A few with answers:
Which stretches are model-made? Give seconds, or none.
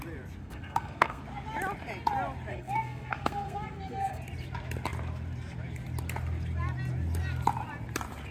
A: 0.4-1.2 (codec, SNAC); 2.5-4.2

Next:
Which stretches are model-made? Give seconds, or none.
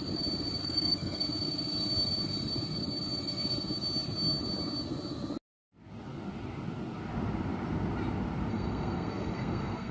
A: 0.6-1.2 (codec, SNAC); 8.5-9.9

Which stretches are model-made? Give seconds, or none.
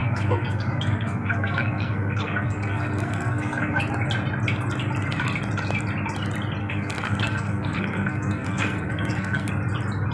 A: 0.0-3.8 (codec, SNAC); 6.6-9.5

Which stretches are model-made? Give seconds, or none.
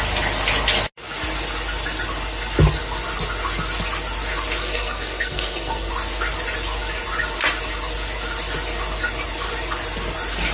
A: 4.6-5.9 (codec, SNAC)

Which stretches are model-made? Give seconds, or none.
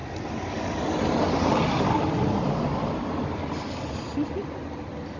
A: none